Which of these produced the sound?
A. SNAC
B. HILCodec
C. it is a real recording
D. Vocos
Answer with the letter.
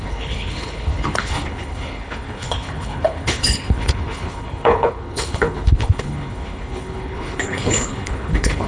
B